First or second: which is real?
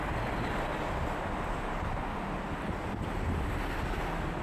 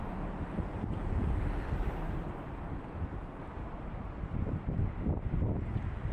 first